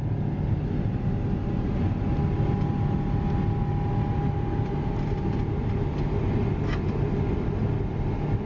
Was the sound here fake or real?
real